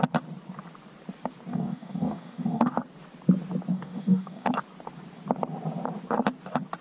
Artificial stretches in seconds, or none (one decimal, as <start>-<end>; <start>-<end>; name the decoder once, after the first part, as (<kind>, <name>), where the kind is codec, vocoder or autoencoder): 1.5-2.7 (codec, DAC); 3.7-4.5